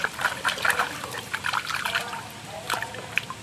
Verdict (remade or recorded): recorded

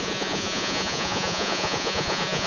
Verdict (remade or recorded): remade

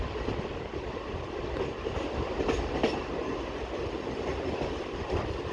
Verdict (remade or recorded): recorded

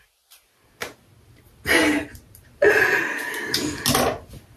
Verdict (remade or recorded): recorded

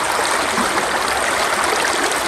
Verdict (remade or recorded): recorded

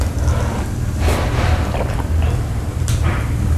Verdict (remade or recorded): remade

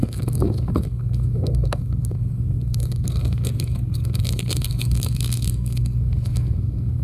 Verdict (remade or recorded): remade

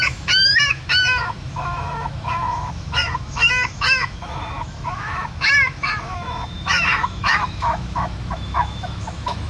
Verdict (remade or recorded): remade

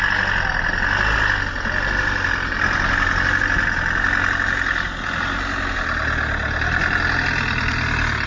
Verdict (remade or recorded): recorded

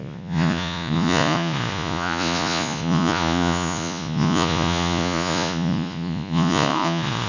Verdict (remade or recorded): remade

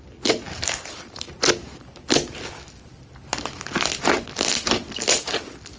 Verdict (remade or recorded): recorded